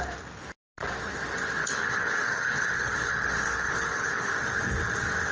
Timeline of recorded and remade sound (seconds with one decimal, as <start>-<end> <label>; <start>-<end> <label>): 0.0-1.6 recorded; 1.6-4.3 remade; 4.3-5.3 recorded